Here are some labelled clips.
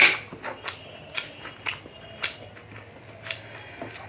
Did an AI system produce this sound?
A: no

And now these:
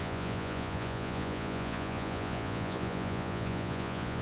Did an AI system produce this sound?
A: yes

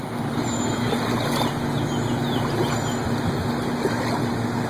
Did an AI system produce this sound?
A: no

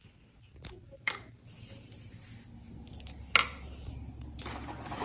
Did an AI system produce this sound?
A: no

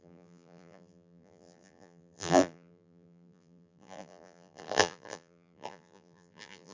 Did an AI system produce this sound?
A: yes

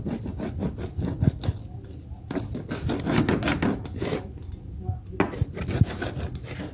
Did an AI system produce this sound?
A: no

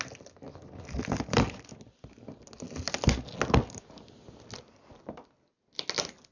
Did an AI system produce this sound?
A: no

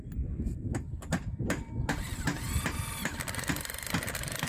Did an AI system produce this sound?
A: no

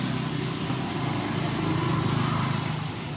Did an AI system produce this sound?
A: no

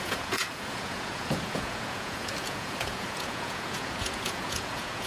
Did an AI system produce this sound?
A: yes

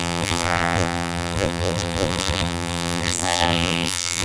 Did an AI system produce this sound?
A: yes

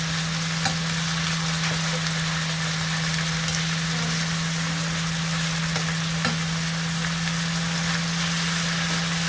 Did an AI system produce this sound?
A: no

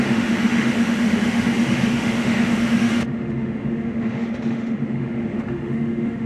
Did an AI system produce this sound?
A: yes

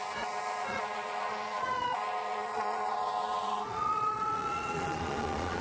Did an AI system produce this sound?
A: yes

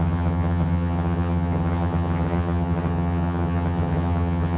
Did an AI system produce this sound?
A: yes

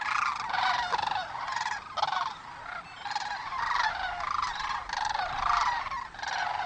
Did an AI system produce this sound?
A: no